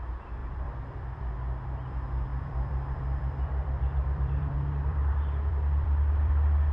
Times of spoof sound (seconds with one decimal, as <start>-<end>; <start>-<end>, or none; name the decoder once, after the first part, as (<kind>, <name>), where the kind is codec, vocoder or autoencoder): 0.4-1.3 (vocoder, BigVGAN v2); 2.3-6.3